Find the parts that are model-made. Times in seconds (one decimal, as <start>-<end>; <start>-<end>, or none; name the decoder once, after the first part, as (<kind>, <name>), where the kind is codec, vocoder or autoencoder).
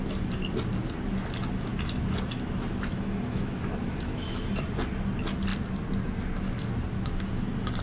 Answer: 2.9-4.5 (autoencoder, DAC-VAE)